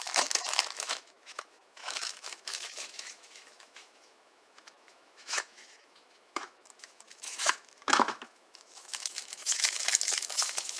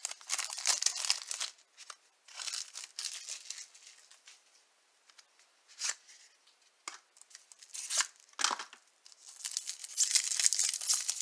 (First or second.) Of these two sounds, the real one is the second